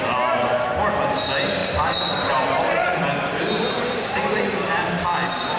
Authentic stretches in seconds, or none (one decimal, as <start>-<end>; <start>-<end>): 0.0-1.6; 5.0-5.6